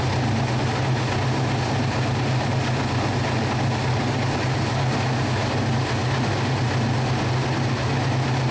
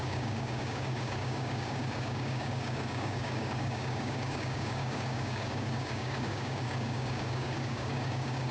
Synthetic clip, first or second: second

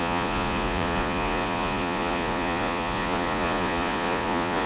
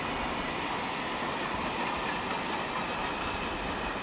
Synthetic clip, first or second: first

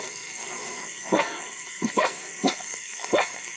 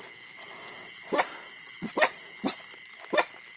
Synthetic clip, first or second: first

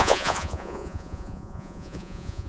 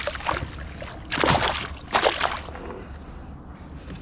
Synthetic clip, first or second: first